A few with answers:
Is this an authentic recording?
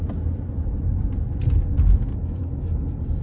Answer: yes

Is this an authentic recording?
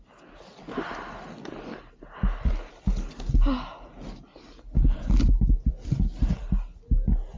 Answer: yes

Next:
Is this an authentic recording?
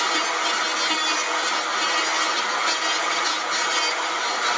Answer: yes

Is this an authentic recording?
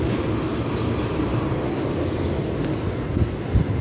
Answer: yes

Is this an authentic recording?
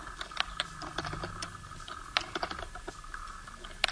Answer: yes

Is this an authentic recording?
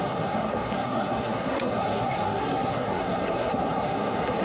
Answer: no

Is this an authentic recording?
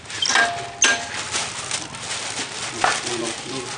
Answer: yes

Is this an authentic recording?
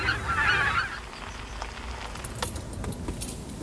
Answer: yes